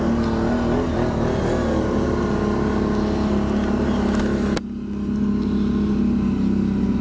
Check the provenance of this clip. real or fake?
real